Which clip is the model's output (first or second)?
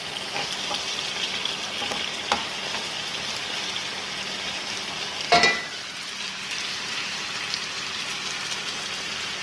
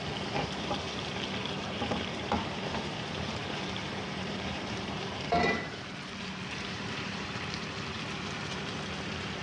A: second